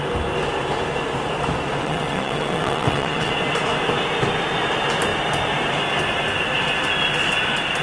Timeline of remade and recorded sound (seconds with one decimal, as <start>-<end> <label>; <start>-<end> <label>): 0.0-1.8 recorded; 1.8-3.3 remade; 3.3-7.8 recorded